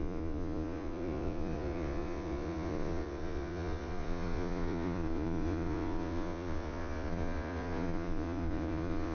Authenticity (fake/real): fake